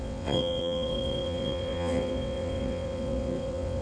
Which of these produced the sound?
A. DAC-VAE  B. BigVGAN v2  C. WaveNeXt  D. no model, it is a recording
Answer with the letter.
C